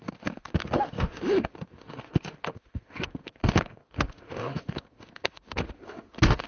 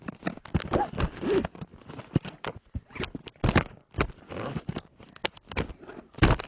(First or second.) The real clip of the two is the second